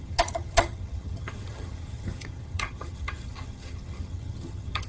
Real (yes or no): no